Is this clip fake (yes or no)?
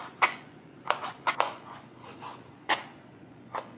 yes